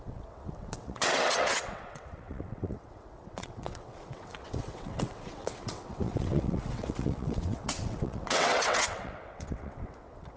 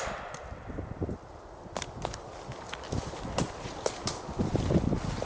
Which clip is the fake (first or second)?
first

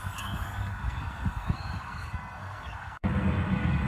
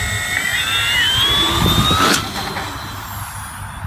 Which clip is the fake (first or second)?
first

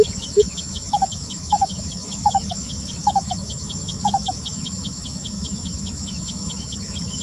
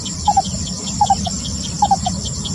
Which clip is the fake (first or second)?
first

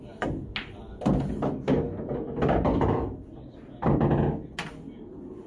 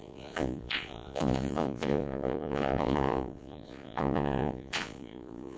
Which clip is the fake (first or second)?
second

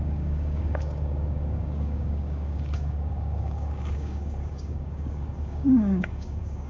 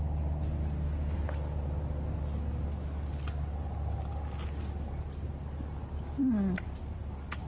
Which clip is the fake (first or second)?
first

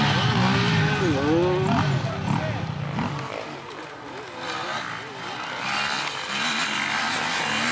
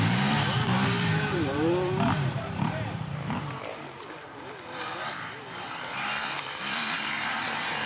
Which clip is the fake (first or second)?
second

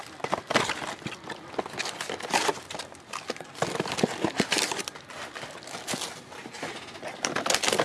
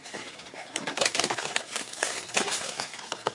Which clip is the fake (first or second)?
second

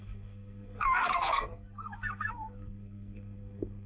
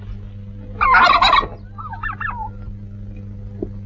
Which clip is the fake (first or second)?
first